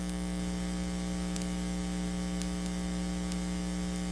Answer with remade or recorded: recorded